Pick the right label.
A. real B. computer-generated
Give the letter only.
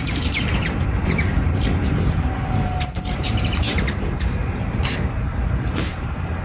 B